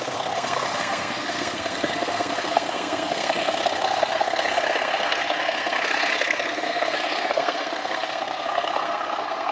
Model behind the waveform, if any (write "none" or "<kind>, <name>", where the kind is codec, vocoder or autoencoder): codec, SNAC